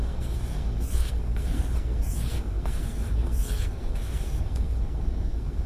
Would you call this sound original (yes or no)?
no